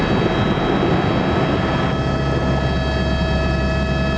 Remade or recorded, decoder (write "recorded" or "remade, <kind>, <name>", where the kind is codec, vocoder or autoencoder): recorded